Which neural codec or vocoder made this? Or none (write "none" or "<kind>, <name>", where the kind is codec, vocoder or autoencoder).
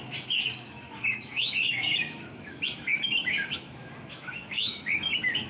autoencoder, DAC-VAE